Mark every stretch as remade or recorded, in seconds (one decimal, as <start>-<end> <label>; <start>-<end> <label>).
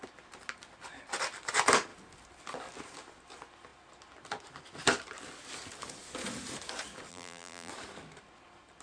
0.0-7.1 recorded; 7.1-7.7 remade; 7.7-8.8 recorded